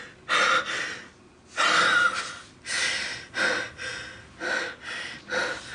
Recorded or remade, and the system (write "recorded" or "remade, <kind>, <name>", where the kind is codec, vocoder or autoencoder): recorded